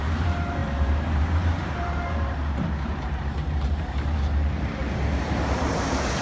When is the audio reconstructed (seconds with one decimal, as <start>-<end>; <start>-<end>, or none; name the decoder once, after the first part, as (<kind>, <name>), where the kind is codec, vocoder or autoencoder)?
0.0-4.8 (vocoder, BigVGAN v2); 5.4-6.2